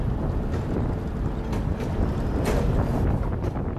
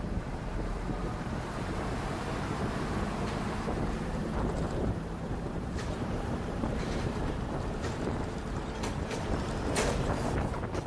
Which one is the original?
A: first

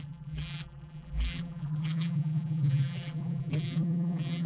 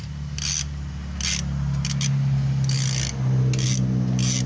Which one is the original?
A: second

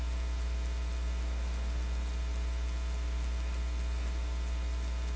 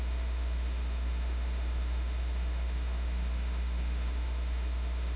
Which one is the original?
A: first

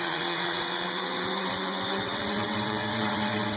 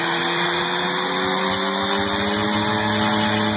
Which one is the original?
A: second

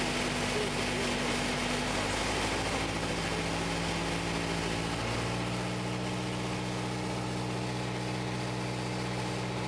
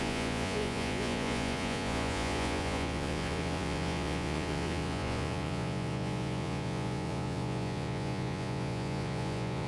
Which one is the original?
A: first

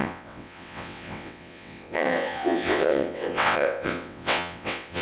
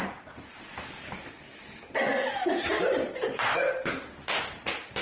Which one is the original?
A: second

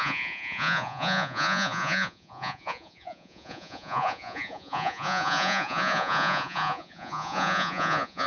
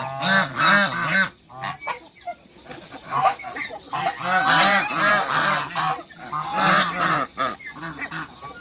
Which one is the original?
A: second